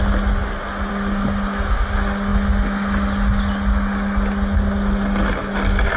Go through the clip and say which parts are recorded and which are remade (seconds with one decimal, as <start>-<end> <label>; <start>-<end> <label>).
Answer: 0.0-6.0 recorded